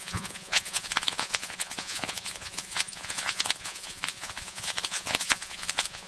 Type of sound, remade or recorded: remade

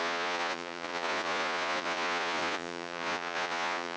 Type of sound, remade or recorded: remade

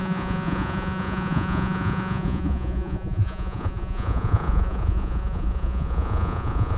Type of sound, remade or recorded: remade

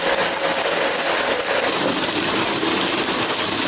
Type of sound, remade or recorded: recorded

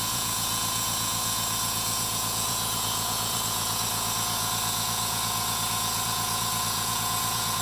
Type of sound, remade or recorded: remade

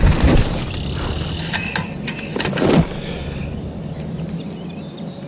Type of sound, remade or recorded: recorded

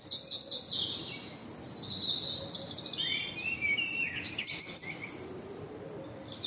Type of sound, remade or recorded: recorded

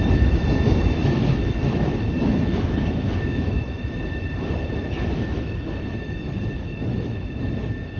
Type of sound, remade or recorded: remade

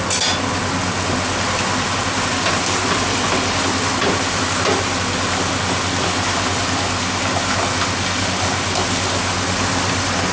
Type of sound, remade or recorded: recorded